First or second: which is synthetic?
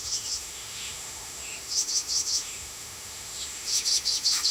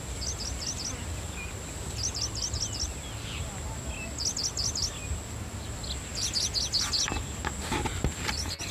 first